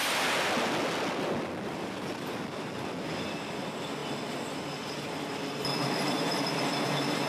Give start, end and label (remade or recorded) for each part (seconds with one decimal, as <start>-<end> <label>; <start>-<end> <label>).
0.0-7.3 recorded